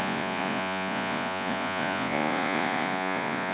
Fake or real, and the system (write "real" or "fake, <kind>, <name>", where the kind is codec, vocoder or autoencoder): fake, vocoder, Vocos